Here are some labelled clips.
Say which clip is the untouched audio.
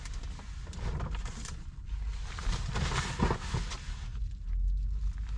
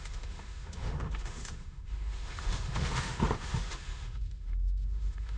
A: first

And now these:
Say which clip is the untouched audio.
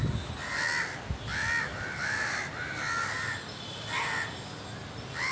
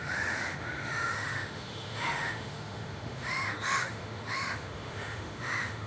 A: first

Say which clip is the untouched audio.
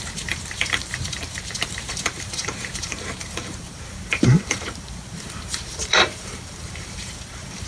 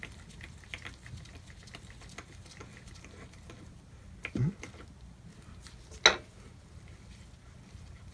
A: second